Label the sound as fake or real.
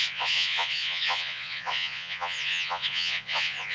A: fake